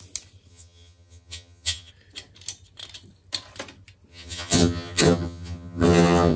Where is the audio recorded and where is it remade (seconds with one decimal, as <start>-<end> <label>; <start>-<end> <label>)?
0.0-0.5 recorded; 0.5-1.9 remade; 1.9-4.1 recorded; 4.1-6.4 remade